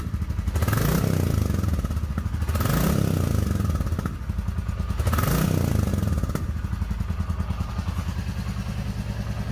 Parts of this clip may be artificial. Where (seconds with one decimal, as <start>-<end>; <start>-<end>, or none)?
none